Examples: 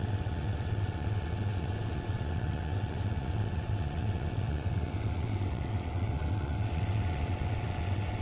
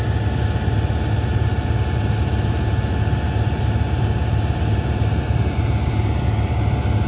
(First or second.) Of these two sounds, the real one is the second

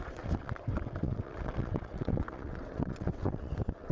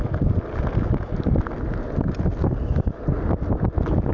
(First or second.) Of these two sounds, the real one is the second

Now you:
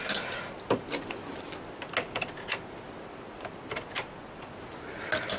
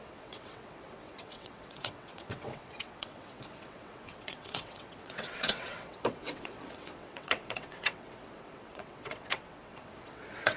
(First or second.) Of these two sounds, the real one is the first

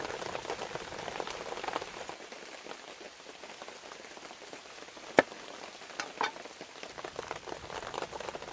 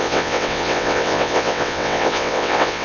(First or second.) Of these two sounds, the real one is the first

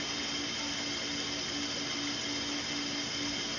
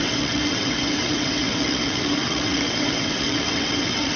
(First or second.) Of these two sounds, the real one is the first